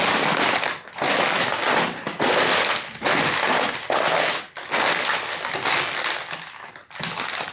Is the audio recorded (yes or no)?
yes